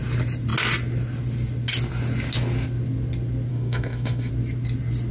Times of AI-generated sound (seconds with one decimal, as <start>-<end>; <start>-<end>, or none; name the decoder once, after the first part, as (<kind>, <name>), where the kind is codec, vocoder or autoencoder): 3.5-4.3 (autoencoder, DAC-VAE)